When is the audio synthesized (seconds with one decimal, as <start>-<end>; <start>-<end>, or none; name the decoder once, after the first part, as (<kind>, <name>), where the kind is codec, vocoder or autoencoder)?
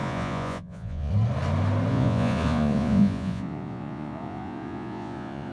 0.0-1.1 (vocoder, Vocos); 1.9-5.5